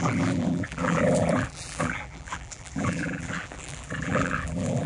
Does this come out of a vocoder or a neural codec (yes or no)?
yes